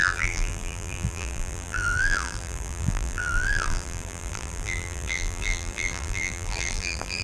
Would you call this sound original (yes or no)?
no